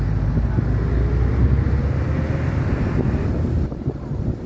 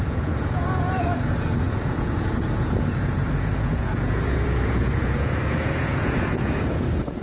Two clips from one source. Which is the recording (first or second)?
first